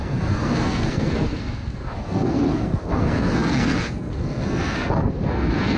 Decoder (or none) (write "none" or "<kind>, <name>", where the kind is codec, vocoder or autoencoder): codec, SNAC